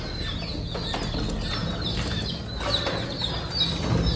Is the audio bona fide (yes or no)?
yes